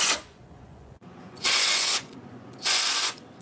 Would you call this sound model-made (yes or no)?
yes